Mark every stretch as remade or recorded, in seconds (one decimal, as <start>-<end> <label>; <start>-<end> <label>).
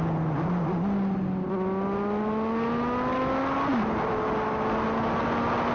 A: 0.0-5.7 recorded